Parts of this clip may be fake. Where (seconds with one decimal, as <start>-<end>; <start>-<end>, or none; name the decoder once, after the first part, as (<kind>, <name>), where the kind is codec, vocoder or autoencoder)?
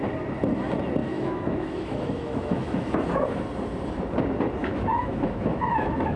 1.0-3.0 (autoencoder, DAC-VAE); 4.6-6.2